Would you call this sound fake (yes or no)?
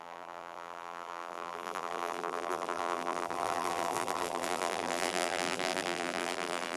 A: yes